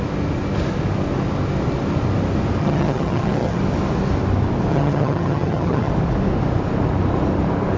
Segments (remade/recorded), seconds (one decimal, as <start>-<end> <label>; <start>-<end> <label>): 0.0-2.6 recorded; 2.6-3.6 remade; 3.6-4.7 recorded; 4.7-5.9 remade; 5.9-7.8 recorded